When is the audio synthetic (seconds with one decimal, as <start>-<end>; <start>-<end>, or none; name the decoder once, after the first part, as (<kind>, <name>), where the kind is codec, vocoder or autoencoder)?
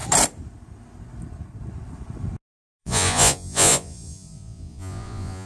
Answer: 2.8-5.5 (vocoder, Vocos)